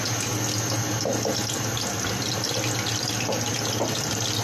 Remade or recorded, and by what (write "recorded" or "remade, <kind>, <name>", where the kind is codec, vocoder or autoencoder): recorded